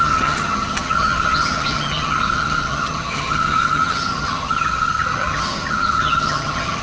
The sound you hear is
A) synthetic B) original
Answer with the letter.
A